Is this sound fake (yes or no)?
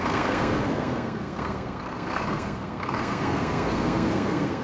yes